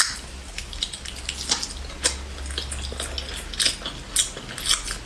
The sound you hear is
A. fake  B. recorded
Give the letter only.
B